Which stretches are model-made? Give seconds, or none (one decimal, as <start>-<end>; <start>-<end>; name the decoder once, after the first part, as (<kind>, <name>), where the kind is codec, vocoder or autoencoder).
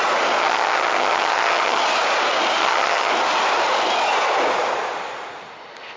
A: 0.4-1.8 (vocoder, HiFi-GAN); 2.6-3.1